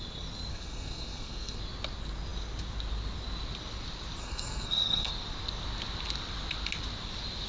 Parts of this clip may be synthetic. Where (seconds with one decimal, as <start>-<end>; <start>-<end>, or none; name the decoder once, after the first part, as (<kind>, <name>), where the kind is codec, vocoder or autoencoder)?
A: 0.5-1.6 (codec, SNAC); 4.2-5.1